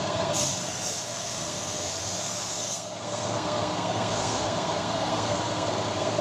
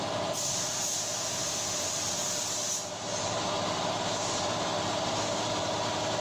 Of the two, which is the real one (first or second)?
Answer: second